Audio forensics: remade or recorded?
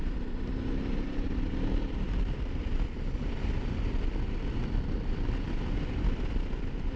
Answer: remade